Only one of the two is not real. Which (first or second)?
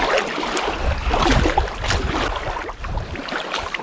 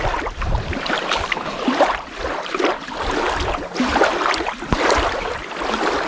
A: second